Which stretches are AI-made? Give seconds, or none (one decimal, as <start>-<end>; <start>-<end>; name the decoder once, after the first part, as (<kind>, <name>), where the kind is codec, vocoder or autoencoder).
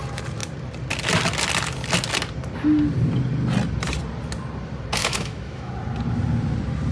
5.0-5.7 (autoencoder, DAC-VAE)